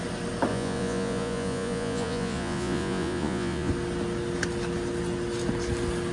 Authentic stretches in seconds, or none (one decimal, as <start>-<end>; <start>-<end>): 0.0-0.5; 3.7-6.1